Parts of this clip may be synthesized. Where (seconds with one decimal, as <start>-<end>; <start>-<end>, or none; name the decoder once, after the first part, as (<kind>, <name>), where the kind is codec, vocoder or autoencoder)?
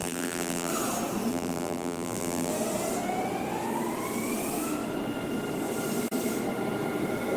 0.0-0.7 (vocoder, BigVGAN v2); 1.3-2.5